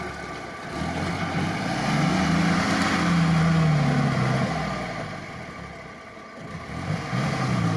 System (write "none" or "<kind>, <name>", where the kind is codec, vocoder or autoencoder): none